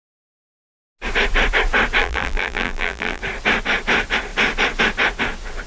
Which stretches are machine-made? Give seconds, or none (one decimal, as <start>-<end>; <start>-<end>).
2.0-3.2